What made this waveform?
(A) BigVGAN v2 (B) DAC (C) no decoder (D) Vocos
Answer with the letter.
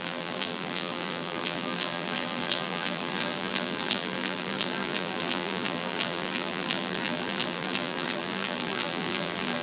A